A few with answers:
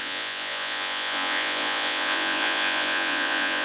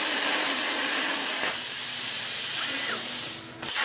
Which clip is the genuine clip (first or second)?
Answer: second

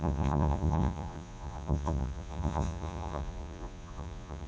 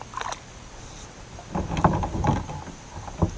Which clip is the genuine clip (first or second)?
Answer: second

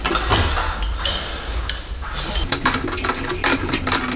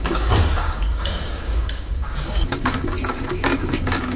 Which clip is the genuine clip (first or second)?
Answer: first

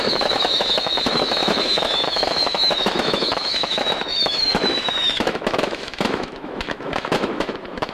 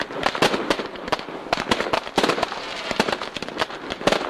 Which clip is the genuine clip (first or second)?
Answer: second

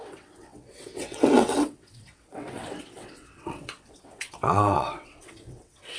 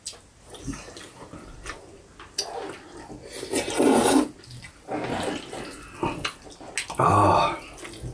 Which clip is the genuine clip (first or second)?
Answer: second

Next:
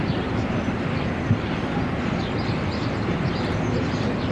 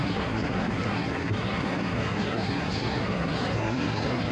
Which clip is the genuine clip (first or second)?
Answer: first